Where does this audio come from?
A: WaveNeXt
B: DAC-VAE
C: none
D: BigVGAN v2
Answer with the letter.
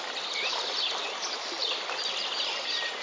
D